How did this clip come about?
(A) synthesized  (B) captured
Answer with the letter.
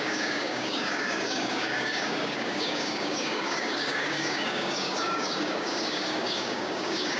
A